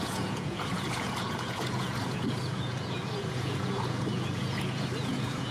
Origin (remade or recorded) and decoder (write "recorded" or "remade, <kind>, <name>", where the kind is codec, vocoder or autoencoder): remade, vocoder, Vocos